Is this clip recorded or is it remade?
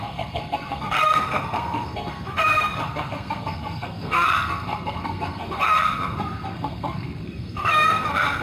remade